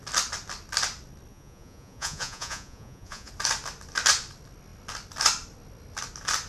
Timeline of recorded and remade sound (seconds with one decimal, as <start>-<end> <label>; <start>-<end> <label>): 0.0-1.3 recorded; 1.3-3.3 remade; 3.3-6.5 recorded